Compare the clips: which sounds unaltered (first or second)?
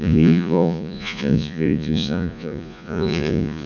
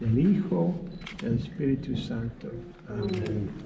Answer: second